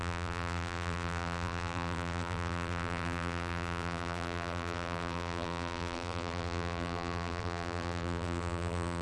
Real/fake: fake